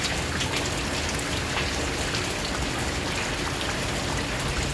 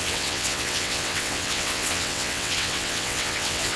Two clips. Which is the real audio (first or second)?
first